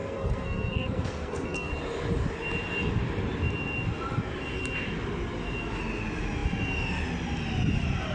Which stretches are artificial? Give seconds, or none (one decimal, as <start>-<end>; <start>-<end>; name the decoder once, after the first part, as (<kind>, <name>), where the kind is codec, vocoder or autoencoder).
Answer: 0.0-1.7 (codec, SNAC)